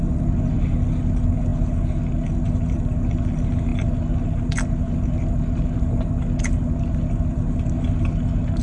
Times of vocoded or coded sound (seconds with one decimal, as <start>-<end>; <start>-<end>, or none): none